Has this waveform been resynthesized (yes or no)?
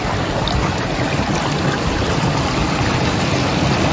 no